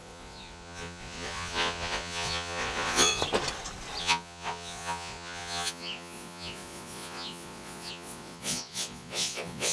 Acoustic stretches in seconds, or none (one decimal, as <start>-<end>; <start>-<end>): 3.2-4.0